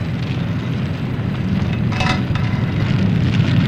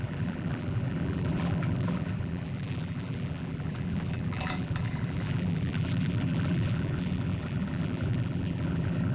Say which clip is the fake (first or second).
second